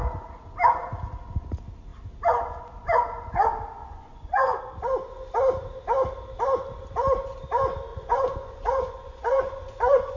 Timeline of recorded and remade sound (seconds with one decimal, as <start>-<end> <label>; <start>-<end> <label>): 0.0-3.8 recorded; 3.8-4.6 remade; 4.6-7.9 recorded; 7.9-10.2 remade

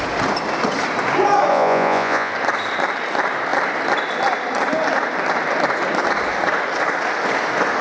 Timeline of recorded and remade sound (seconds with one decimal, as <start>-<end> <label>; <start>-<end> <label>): 0.0-1.5 recorded; 1.5-2.3 remade; 2.3-7.8 recorded

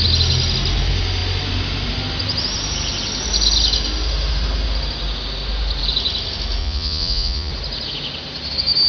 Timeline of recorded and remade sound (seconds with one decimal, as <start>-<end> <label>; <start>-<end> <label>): 0.0-6.6 recorded; 6.6-7.5 remade; 7.5-8.9 recorded

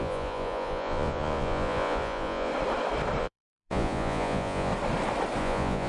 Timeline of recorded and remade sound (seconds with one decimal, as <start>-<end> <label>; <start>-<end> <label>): 0.0-2.5 remade; 2.5-3.2 recorded; 3.2-4.7 remade; 4.7-5.4 recorded; 5.4-5.9 remade

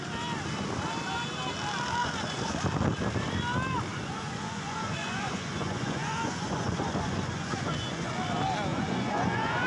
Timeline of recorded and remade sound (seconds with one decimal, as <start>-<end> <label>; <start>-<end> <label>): 0.0-2.0 recorded; 2.0-2.5 remade; 2.5-3.9 recorded; 3.9-8.1 remade; 8.1-8.7 recorded; 8.7-9.7 remade

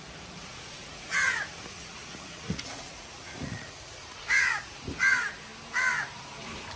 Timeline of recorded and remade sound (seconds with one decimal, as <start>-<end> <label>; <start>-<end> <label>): 0.0-0.4 recorded; 0.4-4.5 remade; 4.5-6.8 recorded